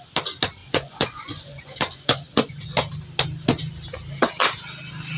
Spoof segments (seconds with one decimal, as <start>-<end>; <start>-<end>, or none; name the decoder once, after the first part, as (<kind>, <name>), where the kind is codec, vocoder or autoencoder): 0.6-2.5 (vocoder, Vocos)